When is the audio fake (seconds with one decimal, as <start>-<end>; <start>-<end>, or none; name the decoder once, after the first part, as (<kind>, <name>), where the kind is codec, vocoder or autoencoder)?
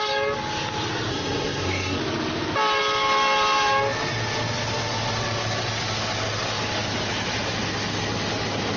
1.1-2.0 (codec, SNAC)